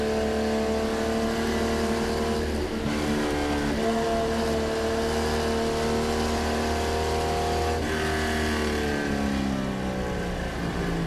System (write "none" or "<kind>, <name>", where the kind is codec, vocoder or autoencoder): none